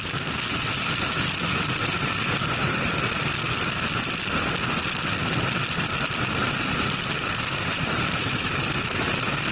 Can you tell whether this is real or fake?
real